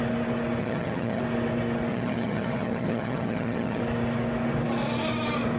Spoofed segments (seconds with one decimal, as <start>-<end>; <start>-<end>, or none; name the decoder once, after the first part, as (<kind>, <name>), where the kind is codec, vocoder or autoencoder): 0.6-1.2 (vocoder, HiFi-GAN); 1.9-3.8